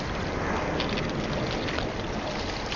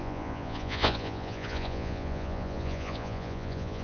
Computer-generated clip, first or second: second